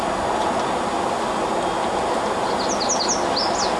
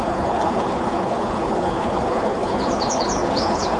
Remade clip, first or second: second